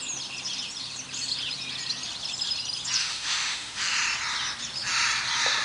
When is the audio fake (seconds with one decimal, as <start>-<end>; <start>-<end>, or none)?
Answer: 3.0-3.8